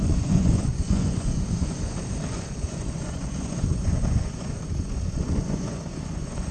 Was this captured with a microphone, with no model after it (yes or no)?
no